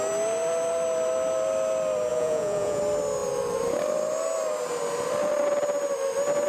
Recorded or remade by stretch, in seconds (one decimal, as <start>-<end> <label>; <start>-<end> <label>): 0.0-2.1 recorded; 2.1-2.8 remade; 2.8-6.5 recorded

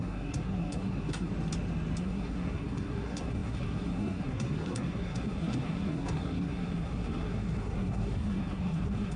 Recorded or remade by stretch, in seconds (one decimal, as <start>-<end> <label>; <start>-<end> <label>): 0.0-1.3 remade; 1.3-2.0 recorded; 2.0-9.2 remade